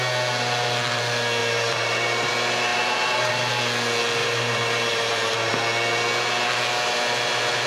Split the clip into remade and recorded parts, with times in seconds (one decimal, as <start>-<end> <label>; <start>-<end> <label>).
0.0-1.4 recorded; 1.4-2.3 remade; 2.3-2.7 recorded; 2.7-3.3 remade; 3.3-4.2 recorded; 4.2-5.5 remade; 5.5-7.7 recorded